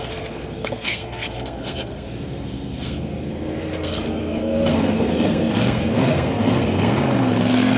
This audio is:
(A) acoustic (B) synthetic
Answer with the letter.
B